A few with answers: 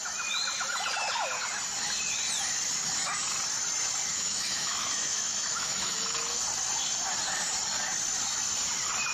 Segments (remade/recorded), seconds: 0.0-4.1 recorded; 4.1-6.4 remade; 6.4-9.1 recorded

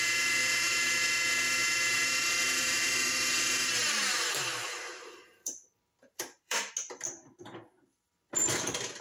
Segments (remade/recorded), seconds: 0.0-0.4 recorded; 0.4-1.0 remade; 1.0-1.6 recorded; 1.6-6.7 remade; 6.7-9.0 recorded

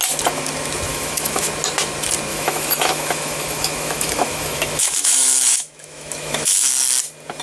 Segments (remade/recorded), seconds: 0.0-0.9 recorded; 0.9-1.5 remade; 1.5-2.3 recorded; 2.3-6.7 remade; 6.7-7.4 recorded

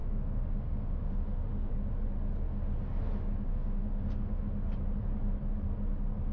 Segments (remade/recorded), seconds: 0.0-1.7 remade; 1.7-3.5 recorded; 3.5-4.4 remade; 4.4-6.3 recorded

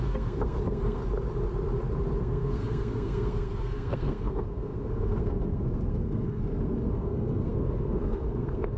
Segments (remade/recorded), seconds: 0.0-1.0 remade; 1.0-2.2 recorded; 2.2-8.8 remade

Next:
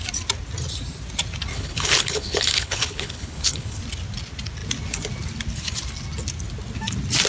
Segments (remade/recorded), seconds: 0.0-1.5 recorded; 1.5-3.8 remade; 3.8-7.3 recorded

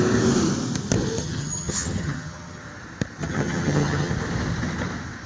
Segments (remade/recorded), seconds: 0.0-1.2 recorded; 1.2-2.6 remade; 2.6-3.2 recorded; 3.2-4.1 remade; 4.1-5.3 recorded